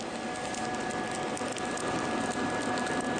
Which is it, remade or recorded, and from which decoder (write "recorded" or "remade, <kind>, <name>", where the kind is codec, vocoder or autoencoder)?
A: recorded